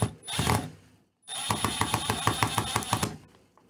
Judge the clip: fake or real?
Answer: real